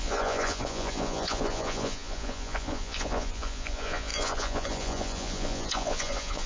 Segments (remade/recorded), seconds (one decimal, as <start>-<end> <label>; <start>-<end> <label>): 0.0-6.5 remade